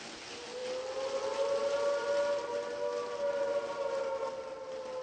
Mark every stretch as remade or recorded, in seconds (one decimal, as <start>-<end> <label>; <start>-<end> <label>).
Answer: 0.0-5.0 recorded